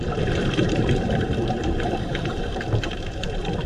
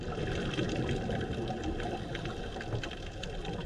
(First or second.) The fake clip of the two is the first